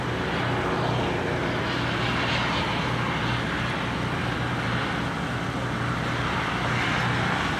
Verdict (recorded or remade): recorded